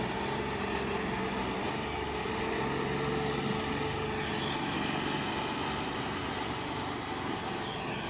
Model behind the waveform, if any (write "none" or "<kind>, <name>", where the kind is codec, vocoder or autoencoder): none